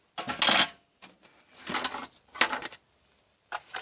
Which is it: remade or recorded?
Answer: recorded